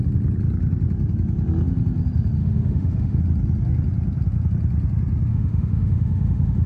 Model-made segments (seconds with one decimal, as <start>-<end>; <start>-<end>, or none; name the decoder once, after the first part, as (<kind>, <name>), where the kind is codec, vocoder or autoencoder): 2.4-3.2 (autoencoder, DAC-VAE); 5.3-6.7